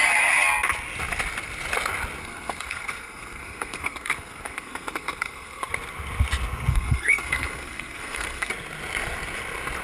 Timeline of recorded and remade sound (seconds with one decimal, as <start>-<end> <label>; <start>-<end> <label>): 0.0-2.2 recorded; 2.2-5.7 remade; 5.7-6.7 recorded; 6.7-8.5 remade; 8.5-9.8 recorded